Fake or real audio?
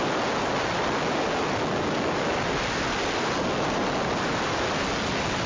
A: real